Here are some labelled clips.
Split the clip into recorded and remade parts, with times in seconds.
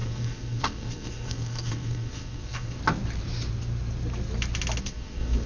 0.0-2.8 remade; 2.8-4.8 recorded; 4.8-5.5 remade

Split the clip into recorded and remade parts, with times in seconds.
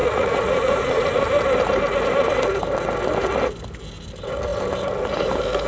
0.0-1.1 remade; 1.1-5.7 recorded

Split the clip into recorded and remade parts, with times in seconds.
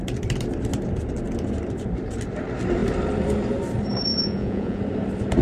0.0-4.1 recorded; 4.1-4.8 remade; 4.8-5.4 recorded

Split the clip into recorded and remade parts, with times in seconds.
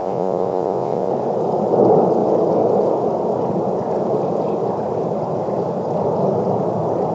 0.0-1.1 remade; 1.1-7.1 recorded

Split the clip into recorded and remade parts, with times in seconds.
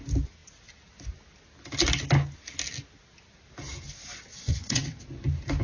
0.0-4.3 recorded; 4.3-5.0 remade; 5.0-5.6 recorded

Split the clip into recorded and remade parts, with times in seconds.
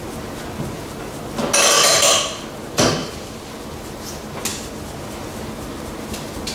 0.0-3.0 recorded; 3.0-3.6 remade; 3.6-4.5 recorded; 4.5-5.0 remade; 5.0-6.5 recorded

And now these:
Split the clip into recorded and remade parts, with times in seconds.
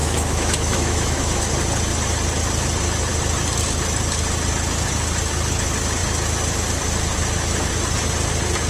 0.0-1.4 remade; 1.4-8.7 recorded